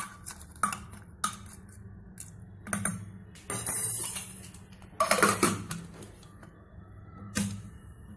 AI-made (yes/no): no